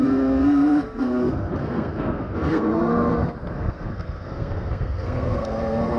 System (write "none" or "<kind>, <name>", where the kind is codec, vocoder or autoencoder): codec, SNAC